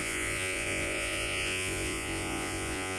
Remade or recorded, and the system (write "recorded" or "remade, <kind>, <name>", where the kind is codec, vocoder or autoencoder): remade, vocoder, Vocos